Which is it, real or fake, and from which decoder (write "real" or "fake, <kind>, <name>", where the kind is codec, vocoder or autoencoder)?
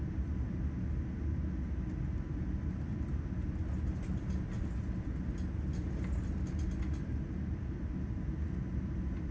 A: real